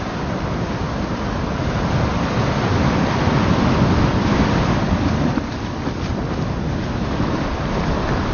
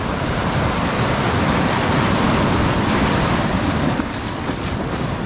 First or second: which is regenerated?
second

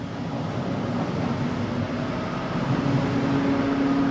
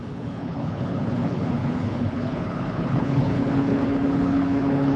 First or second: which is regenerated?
second